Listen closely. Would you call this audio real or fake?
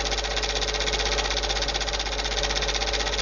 real